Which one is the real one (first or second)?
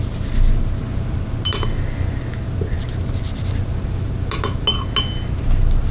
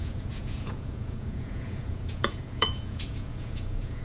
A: first